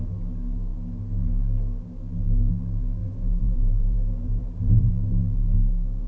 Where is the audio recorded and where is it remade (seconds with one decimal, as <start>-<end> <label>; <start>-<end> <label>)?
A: 0.0-3.0 recorded; 3.0-4.9 remade; 4.9-6.1 recorded